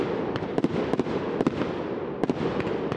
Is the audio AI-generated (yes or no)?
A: no